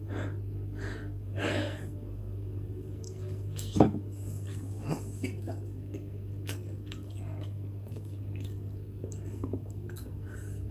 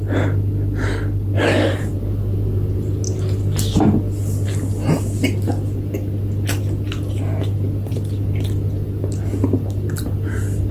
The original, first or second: second